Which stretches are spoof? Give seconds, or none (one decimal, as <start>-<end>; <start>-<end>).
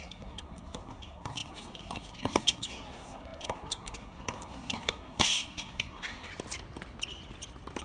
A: 0.0-6.3